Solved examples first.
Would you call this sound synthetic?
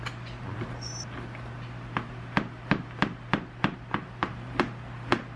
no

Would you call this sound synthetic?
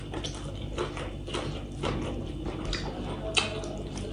no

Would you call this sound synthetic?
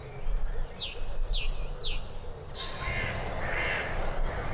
no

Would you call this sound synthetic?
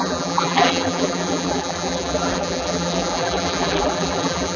yes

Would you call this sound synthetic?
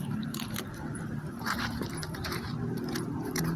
yes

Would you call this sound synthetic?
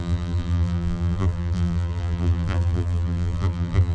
yes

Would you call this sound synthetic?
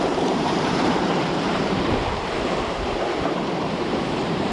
yes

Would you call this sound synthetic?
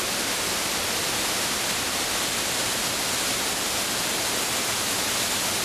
yes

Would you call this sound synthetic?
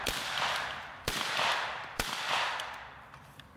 yes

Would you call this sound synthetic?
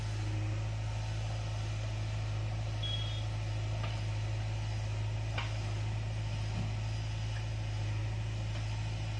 no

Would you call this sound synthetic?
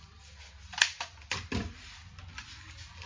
no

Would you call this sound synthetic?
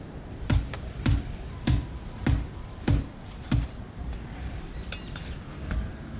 yes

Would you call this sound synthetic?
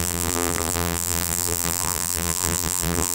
yes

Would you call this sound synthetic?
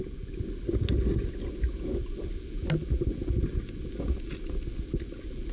no